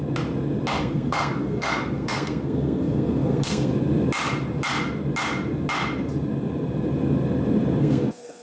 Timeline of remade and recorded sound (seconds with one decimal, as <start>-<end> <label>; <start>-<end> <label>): 0.0-0.8 recorded; 0.8-3.7 remade; 3.7-7.8 recorded; 7.8-8.4 remade